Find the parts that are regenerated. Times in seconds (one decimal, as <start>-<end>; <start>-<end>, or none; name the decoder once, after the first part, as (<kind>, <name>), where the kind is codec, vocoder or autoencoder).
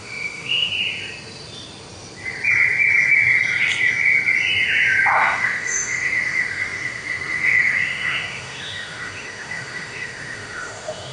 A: 0.0-0.7 (autoencoder, DAC-VAE); 5.2-11.1